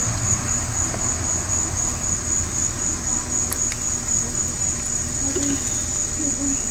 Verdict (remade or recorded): recorded